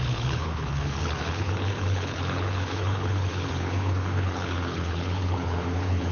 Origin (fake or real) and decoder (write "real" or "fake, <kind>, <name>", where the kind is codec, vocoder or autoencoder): fake, codec, HILCodec